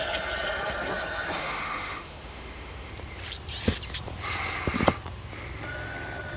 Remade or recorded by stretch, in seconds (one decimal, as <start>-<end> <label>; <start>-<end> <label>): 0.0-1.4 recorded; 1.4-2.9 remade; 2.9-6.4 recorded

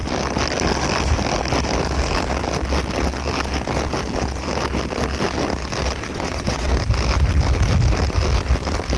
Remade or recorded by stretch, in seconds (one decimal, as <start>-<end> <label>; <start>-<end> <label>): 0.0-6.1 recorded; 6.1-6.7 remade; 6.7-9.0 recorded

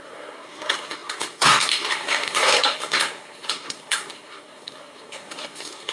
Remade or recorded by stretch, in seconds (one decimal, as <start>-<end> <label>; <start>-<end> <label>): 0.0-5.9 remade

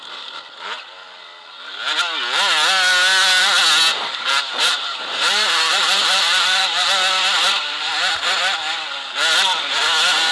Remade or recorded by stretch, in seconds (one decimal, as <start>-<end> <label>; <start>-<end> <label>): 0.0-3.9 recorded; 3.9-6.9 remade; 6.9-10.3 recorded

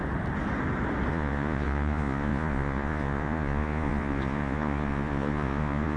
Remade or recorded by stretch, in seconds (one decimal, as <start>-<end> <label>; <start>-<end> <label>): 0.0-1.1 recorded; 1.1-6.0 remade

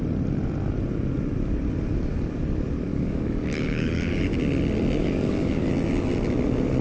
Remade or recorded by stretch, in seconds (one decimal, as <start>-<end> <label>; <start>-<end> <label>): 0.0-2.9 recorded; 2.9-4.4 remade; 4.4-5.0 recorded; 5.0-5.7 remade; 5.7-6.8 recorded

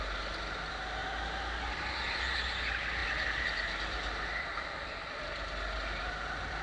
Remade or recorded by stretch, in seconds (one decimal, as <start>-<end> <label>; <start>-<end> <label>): 0.0-6.6 recorded

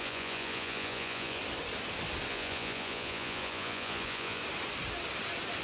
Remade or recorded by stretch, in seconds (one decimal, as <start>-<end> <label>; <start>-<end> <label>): 0.0-1.4 remade; 1.4-2.3 recorded; 2.3-4.4 remade; 4.4-5.6 recorded